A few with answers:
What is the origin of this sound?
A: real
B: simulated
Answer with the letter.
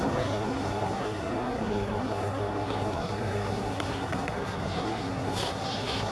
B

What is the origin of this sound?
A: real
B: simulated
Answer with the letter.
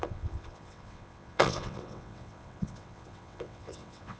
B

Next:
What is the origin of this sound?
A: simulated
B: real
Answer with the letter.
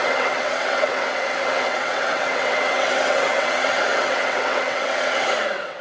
A